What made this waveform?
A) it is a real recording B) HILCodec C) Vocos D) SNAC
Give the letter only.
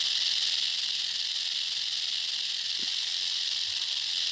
A